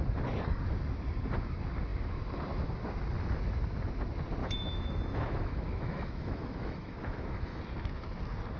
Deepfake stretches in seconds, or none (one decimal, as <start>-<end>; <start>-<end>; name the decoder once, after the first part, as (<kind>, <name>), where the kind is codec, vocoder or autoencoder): 4.4-7.6 (autoencoder, DAC-VAE)